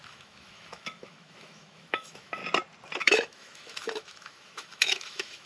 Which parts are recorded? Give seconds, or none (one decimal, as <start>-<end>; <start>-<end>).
2.4-3.0